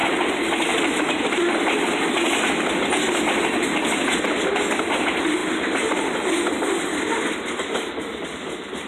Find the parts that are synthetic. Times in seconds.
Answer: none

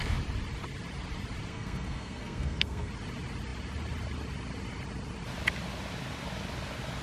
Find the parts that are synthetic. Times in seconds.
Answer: 1.5-2.9 (codec, SNAC)

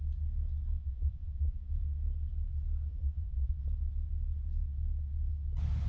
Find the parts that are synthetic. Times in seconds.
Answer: 0.8-1.7 (vocoder, Vocos); 2.9-3.6